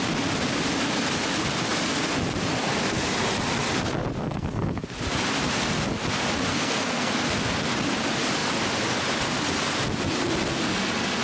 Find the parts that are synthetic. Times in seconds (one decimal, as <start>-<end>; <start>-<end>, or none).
4.2-4.8; 6.5-7.1